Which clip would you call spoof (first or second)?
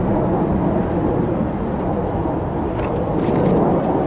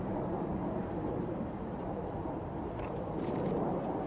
second